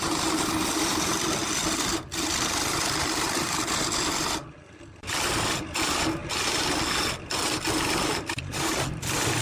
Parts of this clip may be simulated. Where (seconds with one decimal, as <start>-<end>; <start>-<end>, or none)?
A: none